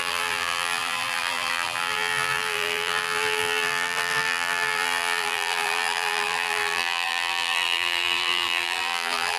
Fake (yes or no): yes